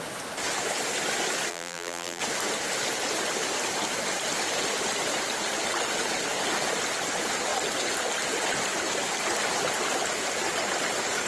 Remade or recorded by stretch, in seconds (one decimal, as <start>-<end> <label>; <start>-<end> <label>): 0.0-1.5 recorded; 1.5-2.2 remade; 2.2-11.3 recorded